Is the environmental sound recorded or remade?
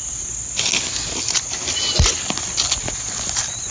recorded